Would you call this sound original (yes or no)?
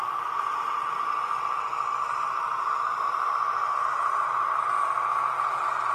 no